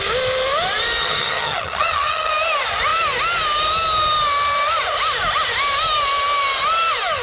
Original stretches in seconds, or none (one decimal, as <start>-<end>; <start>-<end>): 0.0-1.0; 2.3-7.2